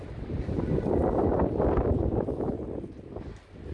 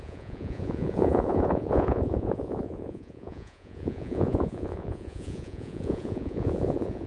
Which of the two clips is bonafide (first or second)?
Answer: first